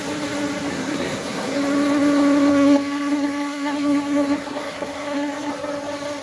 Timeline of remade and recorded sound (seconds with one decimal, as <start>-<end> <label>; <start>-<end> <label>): 0.0-0.7 recorded; 0.7-1.6 remade; 1.6-2.5 recorded; 2.5-5.5 remade; 5.5-6.2 recorded